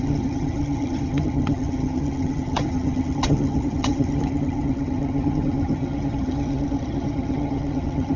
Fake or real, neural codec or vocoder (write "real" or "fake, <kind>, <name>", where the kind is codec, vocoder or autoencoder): fake, vocoder, HiFi-GAN